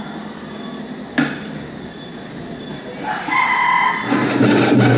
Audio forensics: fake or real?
real